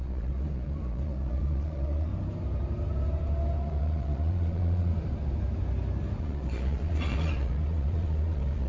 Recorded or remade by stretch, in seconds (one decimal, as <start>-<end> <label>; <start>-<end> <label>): 0.0-2.1 remade; 2.1-3.6 recorded; 3.6-4.9 remade; 4.9-6.2 recorded; 6.2-8.7 remade